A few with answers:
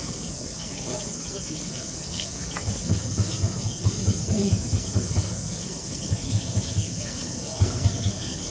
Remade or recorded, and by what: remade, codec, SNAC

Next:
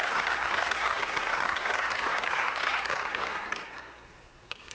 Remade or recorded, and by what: remade, codec, SNAC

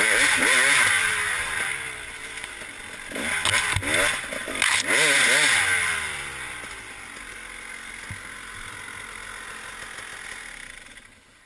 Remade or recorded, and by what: recorded